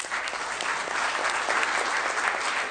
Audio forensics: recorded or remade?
recorded